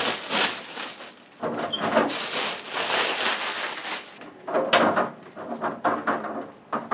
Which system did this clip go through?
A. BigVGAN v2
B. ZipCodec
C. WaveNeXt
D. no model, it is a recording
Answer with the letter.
D